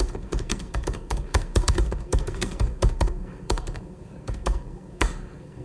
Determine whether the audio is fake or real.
fake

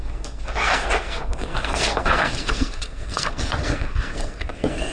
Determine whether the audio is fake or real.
fake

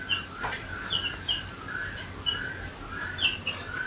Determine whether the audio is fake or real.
real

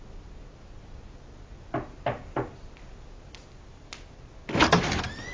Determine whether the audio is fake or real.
real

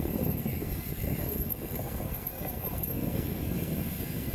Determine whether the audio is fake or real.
fake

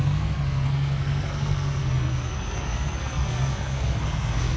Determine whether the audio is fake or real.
fake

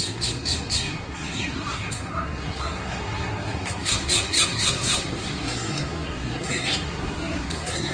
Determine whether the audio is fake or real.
fake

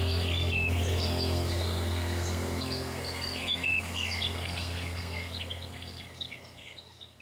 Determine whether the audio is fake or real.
fake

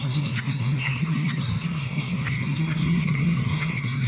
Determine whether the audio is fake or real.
fake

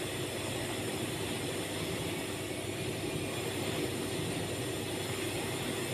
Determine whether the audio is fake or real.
real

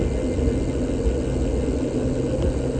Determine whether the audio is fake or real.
real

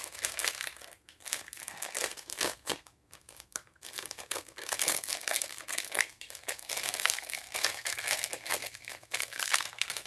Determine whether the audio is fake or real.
fake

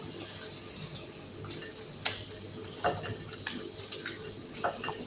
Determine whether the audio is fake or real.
real